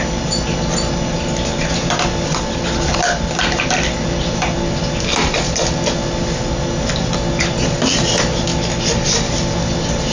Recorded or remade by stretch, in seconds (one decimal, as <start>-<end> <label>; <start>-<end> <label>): 0.0-10.1 recorded